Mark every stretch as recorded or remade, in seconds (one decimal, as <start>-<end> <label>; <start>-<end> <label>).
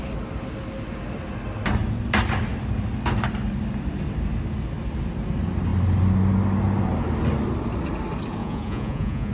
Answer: 0.0-8.4 recorded; 8.4-9.3 remade